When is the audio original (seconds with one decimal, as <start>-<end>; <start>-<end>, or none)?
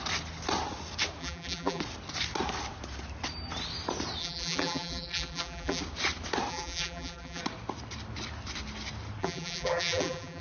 0.0-1.2; 1.8-4.2; 5.8-6.5; 7.4-9.2